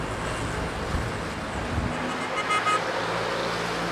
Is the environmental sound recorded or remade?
recorded